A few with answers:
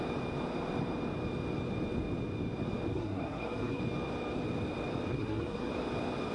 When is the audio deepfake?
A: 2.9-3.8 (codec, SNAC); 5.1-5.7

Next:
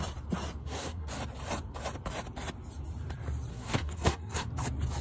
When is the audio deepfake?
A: 0.6-1.1 (codec, SNAC); 3.5-4.5

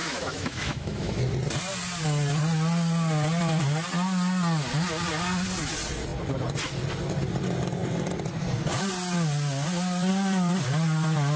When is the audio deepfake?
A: 0.0-1.2 (autoencoder, DAC-VAE)

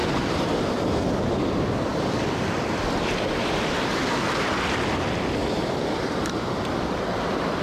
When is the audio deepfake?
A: 0.0-1.0 (vocoder, BigVGAN v2); 1.9-4.0; 5.4-6.6

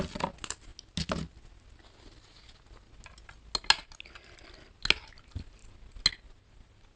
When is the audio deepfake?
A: none